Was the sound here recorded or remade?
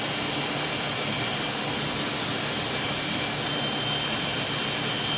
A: recorded